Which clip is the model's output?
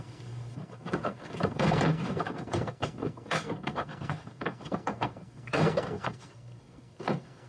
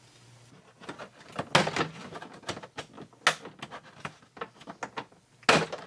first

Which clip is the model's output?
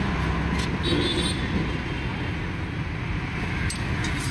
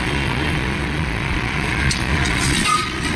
second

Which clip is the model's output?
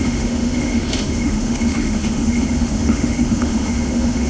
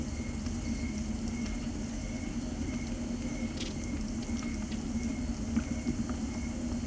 first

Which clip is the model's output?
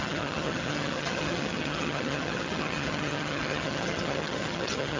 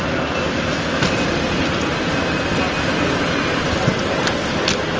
first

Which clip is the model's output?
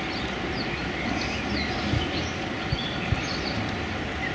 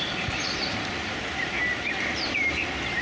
second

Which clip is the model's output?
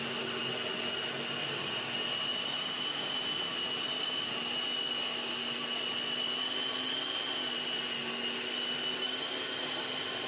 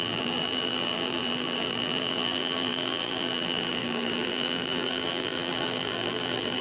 second